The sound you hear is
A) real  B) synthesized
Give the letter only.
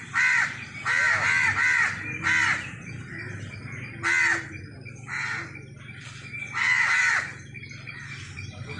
A